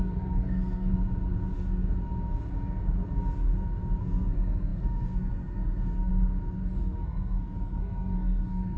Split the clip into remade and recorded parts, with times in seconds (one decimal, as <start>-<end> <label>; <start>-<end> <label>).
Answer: 0.0-0.9 remade; 0.9-4.0 recorded; 4.0-6.1 remade; 6.1-6.8 recorded; 6.8-8.8 remade